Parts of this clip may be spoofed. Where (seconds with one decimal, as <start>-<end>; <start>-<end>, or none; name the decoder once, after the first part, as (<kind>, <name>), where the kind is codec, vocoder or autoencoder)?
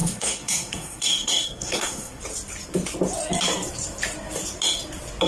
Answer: 0.0-2.2 (codec, SNAC)